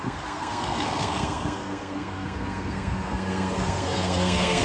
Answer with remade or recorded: remade